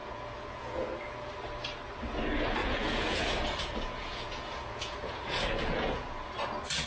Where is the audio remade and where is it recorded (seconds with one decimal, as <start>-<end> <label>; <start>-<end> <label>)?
0.0-1.3 remade; 1.3-2.6 recorded; 2.6-6.3 remade; 6.3-6.9 recorded